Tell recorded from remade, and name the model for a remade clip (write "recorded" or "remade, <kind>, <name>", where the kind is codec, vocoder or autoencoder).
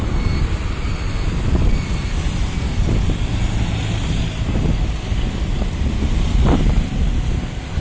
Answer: recorded